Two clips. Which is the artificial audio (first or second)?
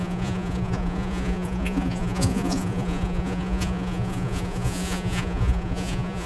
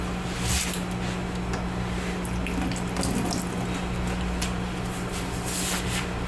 first